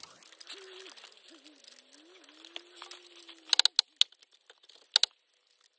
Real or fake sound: real